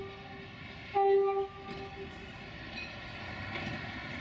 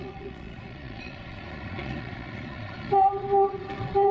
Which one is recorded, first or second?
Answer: first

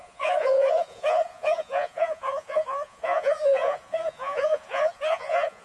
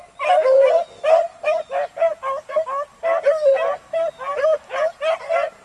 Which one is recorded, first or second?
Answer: second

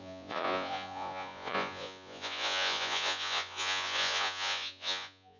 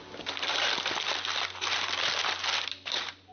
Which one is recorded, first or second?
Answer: second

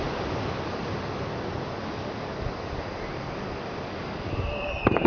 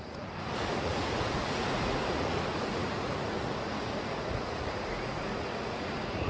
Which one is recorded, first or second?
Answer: first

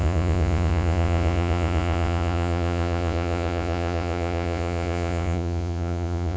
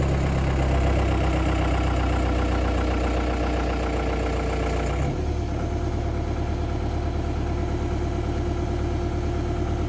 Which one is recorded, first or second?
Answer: second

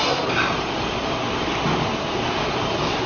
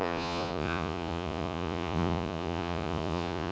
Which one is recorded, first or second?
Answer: first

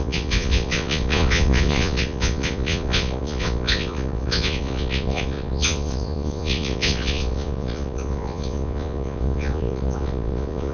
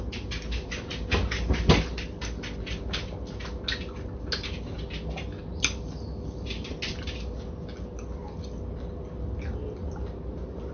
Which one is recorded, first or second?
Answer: second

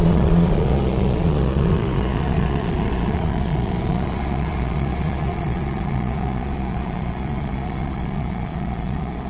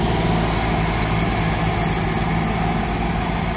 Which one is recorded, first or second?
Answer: second